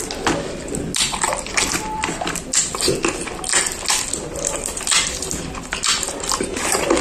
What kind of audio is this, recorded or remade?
recorded